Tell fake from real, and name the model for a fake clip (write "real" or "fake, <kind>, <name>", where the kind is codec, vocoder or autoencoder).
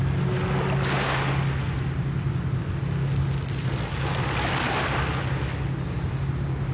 real